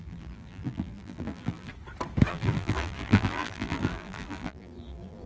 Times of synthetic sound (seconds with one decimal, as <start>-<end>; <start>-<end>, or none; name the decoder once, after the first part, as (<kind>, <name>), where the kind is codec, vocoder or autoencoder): 0.0-1.7 (vocoder, BigVGAN v2); 2.3-5.3